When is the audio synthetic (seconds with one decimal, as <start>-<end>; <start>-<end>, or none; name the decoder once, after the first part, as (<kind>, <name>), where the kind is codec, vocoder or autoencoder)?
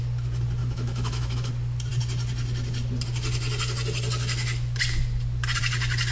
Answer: 0.6-1.5 (autoencoder, DAC-VAE)